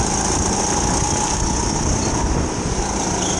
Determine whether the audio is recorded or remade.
recorded